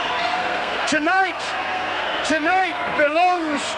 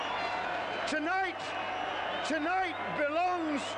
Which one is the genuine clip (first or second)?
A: second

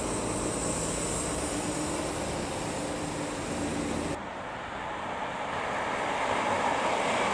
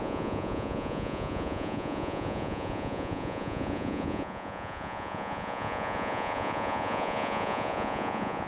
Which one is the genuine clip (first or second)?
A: first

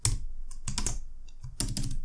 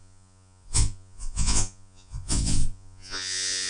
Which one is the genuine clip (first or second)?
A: first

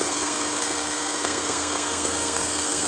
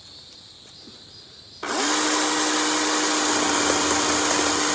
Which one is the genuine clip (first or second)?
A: second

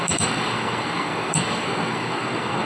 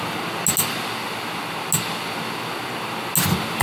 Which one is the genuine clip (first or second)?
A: second